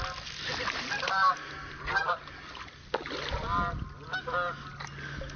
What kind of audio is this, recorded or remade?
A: recorded